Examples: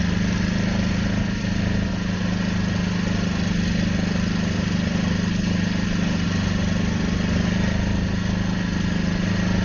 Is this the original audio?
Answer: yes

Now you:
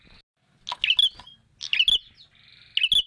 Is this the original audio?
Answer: yes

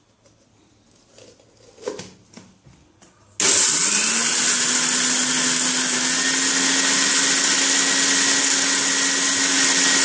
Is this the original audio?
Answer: yes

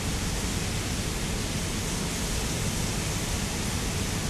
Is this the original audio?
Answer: yes